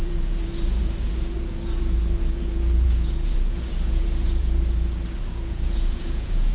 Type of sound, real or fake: fake